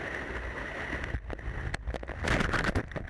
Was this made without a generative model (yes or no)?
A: yes